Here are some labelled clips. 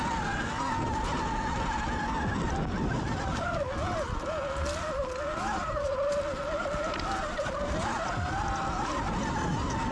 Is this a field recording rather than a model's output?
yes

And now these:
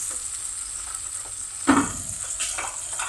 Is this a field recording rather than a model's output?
yes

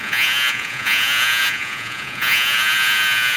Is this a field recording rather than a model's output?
no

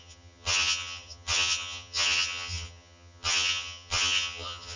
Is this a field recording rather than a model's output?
no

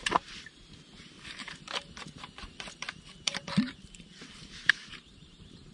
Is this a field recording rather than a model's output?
no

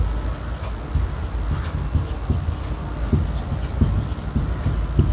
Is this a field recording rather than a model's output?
yes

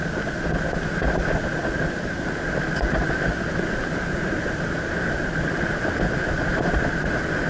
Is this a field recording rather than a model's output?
yes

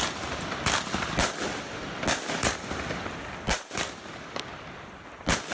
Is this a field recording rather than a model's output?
yes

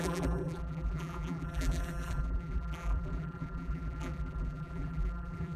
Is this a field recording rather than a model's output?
no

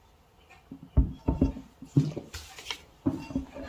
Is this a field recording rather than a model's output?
yes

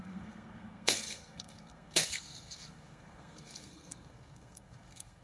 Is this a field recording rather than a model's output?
no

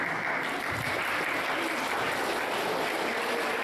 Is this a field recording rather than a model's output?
yes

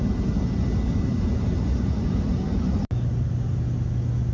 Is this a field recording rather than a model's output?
yes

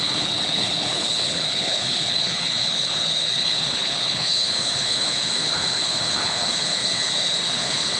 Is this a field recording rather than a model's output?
no